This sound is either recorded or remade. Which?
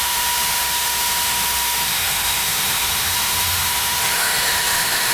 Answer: remade